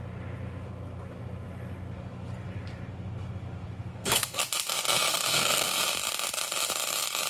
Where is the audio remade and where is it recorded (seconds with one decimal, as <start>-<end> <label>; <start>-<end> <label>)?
0.0-3.9 recorded; 3.9-4.4 remade; 4.4-5.1 recorded; 5.1-5.8 remade; 5.8-7.3 recorded